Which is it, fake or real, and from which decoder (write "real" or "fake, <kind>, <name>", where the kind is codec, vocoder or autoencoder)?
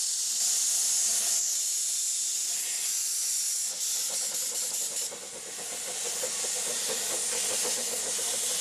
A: real